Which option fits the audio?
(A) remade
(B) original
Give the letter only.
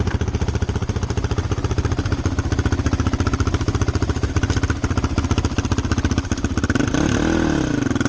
B